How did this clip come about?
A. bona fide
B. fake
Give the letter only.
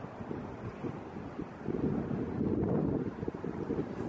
A